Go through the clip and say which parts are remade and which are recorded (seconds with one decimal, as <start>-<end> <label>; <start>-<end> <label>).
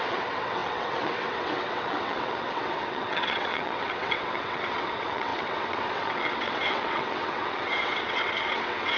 0.0-9.0 remade